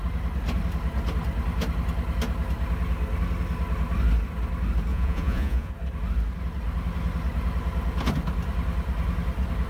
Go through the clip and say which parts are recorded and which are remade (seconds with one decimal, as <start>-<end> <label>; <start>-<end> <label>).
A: 0.0-4.9 recorded; 4.9-5.7 remade; 5.7-9.7 recorded